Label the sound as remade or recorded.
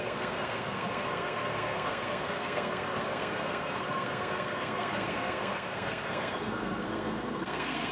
remade